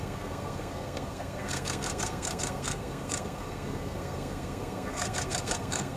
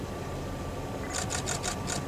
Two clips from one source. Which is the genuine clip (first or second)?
second